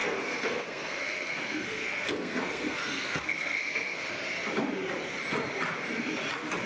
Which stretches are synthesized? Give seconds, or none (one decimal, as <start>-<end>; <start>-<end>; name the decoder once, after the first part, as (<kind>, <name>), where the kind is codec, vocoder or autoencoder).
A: 0.0-4.0 (codec, SNAC)